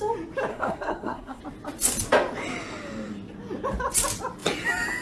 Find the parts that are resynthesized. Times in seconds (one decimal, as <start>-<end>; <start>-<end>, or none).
0.5-1.4